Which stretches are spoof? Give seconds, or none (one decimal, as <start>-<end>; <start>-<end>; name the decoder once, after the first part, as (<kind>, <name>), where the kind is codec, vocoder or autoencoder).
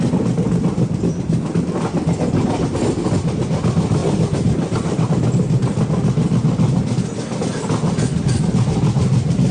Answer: 4.0-5.1 (vocoder, BigVGAN v2)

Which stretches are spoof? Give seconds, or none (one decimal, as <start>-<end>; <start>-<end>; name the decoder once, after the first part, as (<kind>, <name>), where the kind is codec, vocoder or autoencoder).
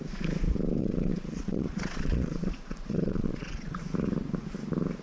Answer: 0.8-3.8 (vocoder, Vocos)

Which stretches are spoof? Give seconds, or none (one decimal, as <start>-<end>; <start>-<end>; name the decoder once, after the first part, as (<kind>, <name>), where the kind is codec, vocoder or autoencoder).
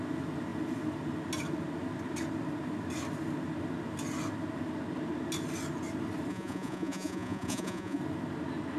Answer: 6.3-8.0 (vocoder, Vocos)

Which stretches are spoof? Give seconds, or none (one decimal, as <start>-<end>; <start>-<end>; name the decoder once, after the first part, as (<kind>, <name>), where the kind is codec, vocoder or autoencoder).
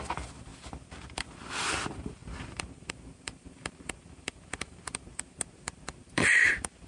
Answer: 0.0-0.5 (vocoder, BigVGAN v2); 1.6-6.9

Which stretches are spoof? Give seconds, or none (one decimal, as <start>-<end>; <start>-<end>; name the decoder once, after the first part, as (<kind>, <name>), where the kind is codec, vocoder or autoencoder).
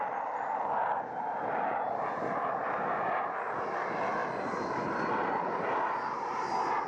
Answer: none